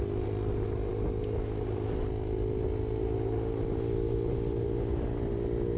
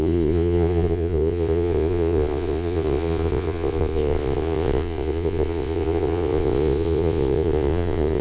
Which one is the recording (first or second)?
first